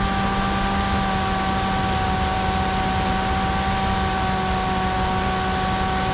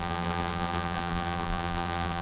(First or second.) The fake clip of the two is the second